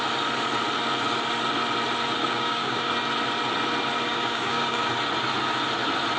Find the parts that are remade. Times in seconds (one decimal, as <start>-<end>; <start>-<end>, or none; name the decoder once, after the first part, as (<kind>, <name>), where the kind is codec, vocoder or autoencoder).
2.2-2.9 (codec, DAC); 4.1-4.9